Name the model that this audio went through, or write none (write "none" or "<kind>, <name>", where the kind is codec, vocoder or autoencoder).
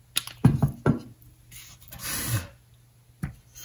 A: none